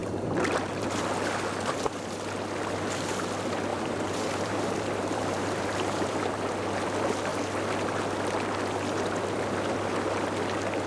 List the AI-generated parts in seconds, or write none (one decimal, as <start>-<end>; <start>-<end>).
0.0-0.7; 3.7-6.1